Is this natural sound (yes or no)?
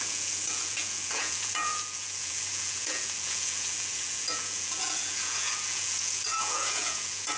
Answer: no